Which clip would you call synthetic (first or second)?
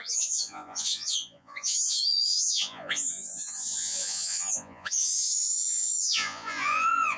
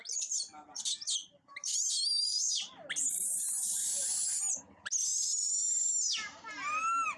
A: first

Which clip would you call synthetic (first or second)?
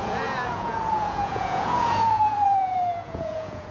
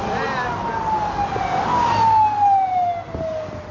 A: first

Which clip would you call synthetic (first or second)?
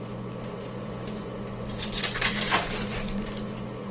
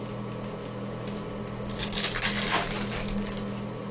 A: first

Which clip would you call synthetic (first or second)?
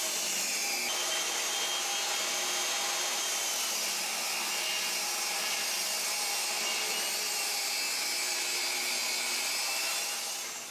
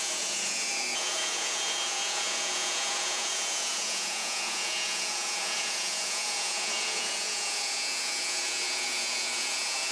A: second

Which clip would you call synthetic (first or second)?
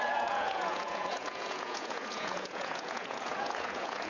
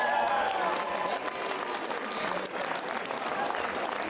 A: first